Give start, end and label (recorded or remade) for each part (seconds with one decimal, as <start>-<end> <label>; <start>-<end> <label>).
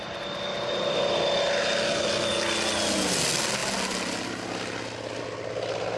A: 0.0-6.0 recorded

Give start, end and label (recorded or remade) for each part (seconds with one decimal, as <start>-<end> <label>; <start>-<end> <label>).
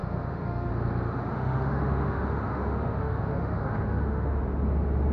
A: 0.0-0.7 remade; 0.7-1.3 recorded; 1.3-4.4 remade; 4.4-5.1 recorded